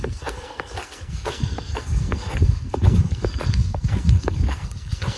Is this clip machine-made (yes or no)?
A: yes